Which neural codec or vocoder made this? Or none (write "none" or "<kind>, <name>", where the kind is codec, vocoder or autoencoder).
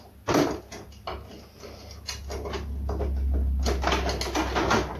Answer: none